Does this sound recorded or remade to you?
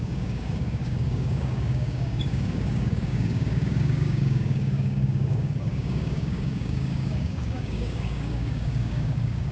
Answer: remade